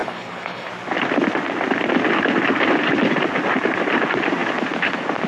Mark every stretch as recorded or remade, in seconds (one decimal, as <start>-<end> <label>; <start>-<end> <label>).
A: 0.0-0.7 remade; 0.7-5.3 recorded